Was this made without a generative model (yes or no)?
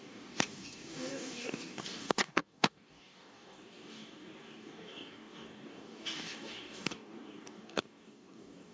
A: no